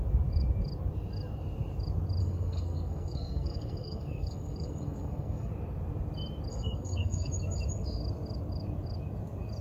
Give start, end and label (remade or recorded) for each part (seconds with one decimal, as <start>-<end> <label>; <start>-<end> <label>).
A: 0.0-2.2 recorded; 2.2-5.5 remade; 5.5-6.5 recorded; 6.5-7.3 remade; 7.3-9.6 recorded